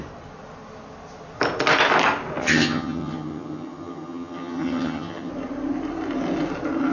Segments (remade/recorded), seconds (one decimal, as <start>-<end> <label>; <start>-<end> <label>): 0.0-2.4 recorded; 2.4-5.3 remade; 5.3-6.9 recorded